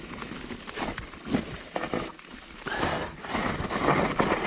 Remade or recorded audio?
recorded